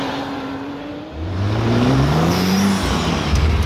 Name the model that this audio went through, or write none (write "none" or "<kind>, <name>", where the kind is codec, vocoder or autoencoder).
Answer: vocoder, BigVGAN v2